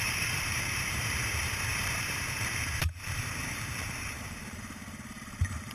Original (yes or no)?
no